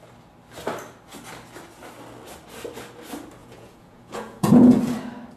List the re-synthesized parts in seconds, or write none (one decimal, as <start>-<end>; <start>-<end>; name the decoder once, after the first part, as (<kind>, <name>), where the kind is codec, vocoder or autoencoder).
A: 3.4-4.8 (vocoder, Vocos)